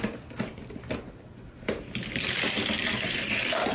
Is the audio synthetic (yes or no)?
no